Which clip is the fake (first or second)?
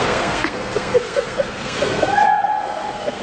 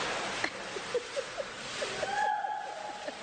first